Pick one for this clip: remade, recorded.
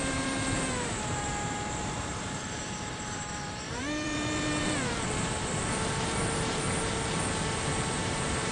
remade